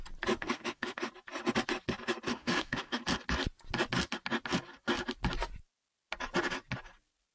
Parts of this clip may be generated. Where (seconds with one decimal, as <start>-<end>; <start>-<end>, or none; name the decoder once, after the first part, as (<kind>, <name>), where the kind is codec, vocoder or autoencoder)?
0.4-1.1 (autoencoder, DAC-VAE); 2.3-3.0